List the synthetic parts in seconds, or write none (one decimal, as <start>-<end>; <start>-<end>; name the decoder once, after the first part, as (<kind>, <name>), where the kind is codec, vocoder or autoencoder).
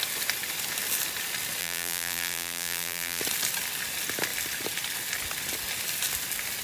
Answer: 1.6-3.2 (vocoder, BigVGAN v2)